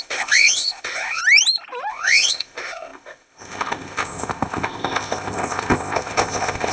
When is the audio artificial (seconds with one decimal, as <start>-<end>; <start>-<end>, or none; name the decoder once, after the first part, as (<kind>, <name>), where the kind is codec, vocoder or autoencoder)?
0.0-1.2 (codec, ZipCodec); 1.9-6.7